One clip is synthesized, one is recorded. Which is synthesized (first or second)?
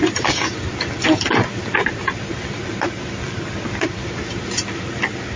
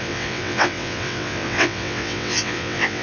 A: second